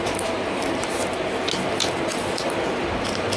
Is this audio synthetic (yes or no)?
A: no